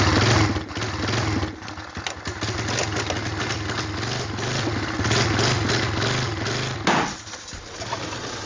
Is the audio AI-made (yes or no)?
no